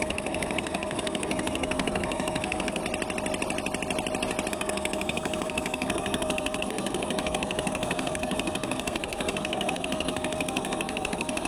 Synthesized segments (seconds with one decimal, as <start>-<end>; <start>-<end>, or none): 0.0-2.8; 4.5-11.5